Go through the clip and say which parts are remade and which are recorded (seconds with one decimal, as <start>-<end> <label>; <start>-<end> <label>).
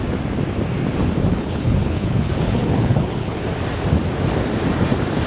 0.0-1.3 recorded; 1.3-3.4 remade; 3.4-5.3 recorded